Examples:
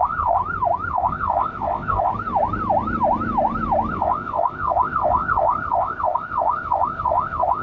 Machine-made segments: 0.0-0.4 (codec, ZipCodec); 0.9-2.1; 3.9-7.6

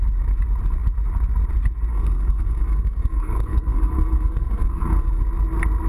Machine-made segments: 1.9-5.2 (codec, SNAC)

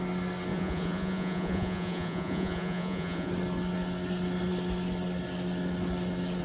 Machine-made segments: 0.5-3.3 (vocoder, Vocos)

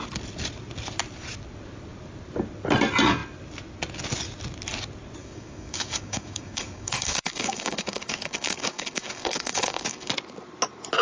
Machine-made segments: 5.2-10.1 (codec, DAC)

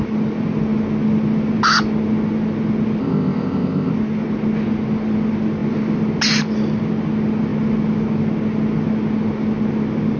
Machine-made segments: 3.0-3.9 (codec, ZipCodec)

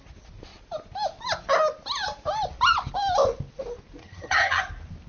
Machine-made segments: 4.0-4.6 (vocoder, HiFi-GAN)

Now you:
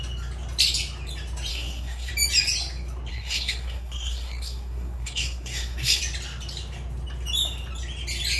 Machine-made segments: 1.5-2.1 (codec, SNAC); 3.1-6.0